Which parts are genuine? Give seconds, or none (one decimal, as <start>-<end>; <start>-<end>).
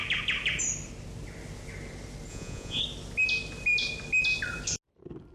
0.0-2.3; 2.8-5.3